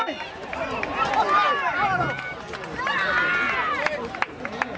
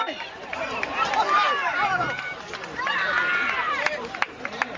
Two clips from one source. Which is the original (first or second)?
first